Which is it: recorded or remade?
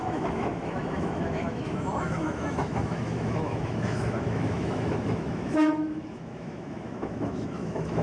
remade